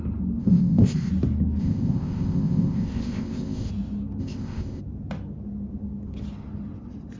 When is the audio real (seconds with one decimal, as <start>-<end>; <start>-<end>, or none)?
0.0-0.4; 1.1-1.6; 3.7-4.2; 4.8-7.2